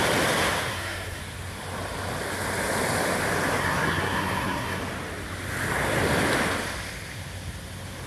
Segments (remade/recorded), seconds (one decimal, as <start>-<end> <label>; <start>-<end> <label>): 0.0-0.7 recorded; 0.7-1.2 remade; 1.2-3.6 recorded; 3.6-4.8 remade; 4.8-8.1 recorded